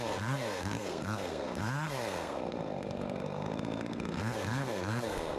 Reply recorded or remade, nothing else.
remade